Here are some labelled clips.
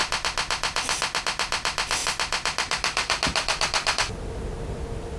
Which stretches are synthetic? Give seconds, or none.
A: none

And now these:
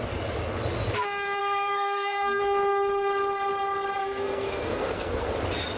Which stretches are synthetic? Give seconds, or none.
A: 1.4-2.4; 4.0-5.3

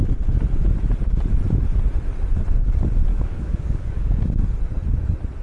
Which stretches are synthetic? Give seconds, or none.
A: 3.1-4.2

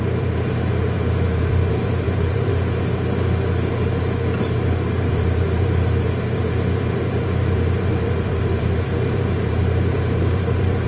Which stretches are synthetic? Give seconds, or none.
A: 0.0-2.5; 5.1-10.9

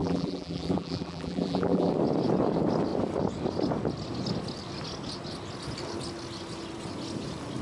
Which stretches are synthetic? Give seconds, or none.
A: 0.0-1.9

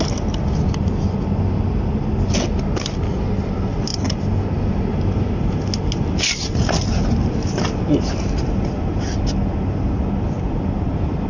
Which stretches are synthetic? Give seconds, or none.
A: none

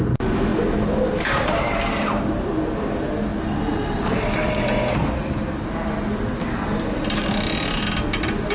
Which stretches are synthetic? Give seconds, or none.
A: none